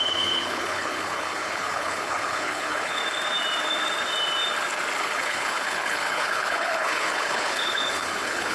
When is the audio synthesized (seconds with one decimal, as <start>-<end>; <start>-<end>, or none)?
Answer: 0.0-3.0; 5.0-8.5